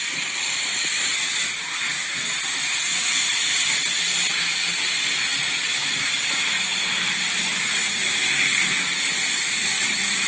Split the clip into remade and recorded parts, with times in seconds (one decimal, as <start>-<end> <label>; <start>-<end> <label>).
0.0-10.3 recorded